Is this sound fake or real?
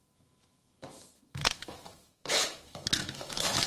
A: fake